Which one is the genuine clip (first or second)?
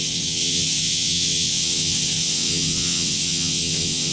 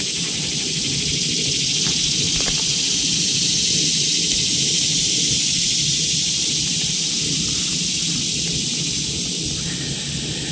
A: second